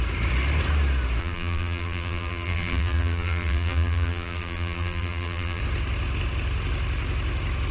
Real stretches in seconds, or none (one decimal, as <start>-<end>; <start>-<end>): 0.0-1.2; 5.6-7.7